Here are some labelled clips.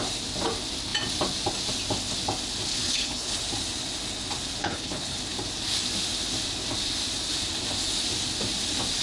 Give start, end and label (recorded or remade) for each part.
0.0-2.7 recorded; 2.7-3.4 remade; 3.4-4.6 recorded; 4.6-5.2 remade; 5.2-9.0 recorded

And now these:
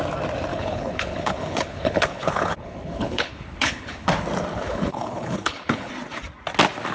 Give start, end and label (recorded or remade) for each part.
0.0-0.5 recorded; 0.5-4.1 remade; 4.1-4.5 recorded; 4.5-5.9 remade; 5.9-6.9 recorded

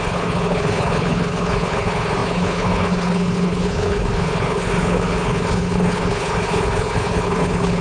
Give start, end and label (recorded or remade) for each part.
0.0-7.8 remade

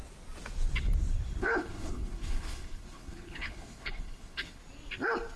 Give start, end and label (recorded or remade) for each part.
0.0-1.4 recorded; 1.4-4.6 remade; 4.6-5.4 recorded

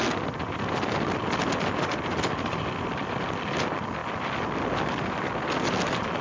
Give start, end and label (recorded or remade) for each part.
0.0-6.2 recorded